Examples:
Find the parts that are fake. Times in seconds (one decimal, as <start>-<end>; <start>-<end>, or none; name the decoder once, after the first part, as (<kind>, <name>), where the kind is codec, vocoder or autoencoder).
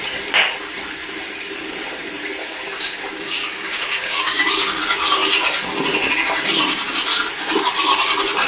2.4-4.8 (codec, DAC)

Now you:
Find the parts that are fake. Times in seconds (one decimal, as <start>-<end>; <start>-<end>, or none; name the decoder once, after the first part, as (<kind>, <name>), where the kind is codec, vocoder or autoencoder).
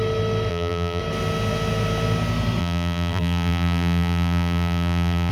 0.5-1.0 (vocoder, BigVGAN v2); 2.6-5.3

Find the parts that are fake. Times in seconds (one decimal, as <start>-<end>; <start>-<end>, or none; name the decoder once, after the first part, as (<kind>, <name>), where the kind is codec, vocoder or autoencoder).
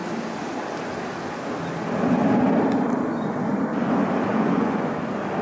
4.3-4.9 (vocoder, Vocos)